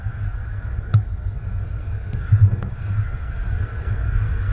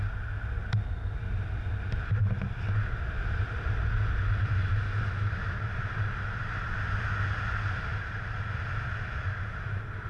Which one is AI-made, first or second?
first